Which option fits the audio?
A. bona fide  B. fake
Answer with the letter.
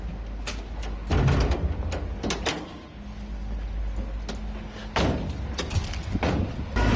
A